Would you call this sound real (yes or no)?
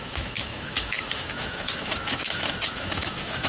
no